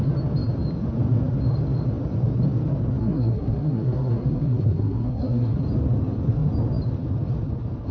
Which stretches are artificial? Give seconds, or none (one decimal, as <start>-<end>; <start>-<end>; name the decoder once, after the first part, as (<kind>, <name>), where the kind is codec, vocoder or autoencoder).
3.0-5.6 (codec, SNAC)